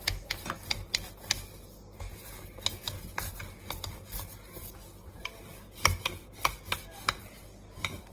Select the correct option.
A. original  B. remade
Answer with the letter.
A